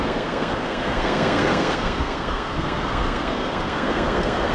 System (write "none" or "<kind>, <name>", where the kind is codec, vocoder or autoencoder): codec, SNAC